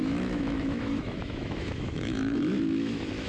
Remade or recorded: remade